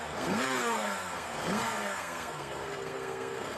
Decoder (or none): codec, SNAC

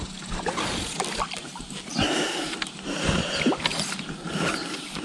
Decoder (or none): none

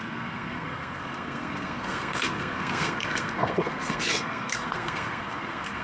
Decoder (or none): codec, SNAC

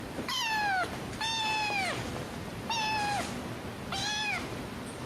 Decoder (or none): none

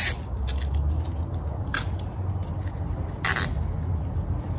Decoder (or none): none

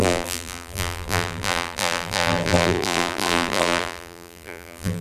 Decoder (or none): vocoder, BigVGAN v2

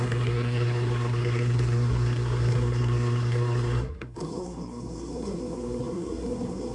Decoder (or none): codec, SNAC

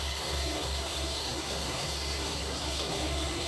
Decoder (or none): codec, SNAC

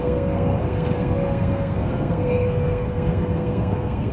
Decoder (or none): codec, SNAC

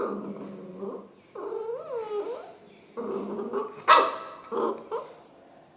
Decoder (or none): none